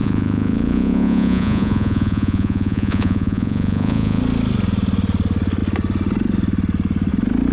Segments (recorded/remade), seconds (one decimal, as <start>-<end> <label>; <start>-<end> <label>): 0.0-4.2 remade; 4.2-7.5 recorded